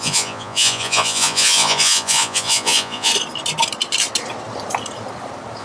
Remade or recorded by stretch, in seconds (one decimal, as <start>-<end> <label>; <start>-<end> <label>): 0.0-3.1 remade; 3.1-5.6 recorded